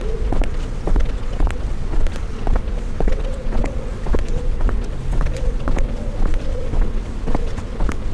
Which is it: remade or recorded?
remade